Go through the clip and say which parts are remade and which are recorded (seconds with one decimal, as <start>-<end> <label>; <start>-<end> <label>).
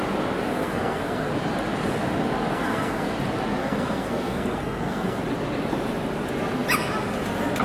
0.0-0.5 recorded; 0.5-1.3 remade; 1.3-2.5 recorded; 2.5-3.1 remade; 3.1-3.6 recorded; 3.6-5.2 remade; 5.2-7.6 recorded